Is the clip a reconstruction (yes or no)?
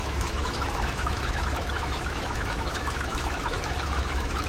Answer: yes